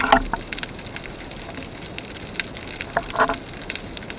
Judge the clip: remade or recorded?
recorded